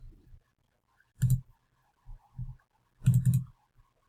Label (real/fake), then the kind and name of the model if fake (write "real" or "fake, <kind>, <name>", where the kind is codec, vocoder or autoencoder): real